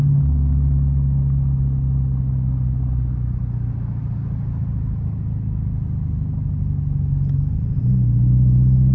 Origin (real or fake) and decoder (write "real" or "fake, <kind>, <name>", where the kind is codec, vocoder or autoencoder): real